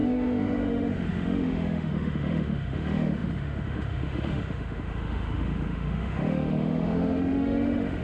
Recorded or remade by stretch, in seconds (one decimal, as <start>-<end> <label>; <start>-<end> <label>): 0.0-8.0 remade

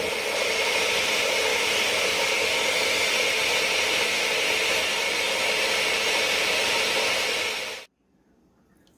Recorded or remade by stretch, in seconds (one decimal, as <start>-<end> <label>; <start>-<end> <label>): 0.0-9.0 recorded